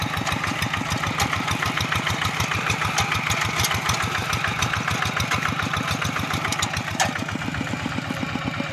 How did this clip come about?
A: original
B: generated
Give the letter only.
A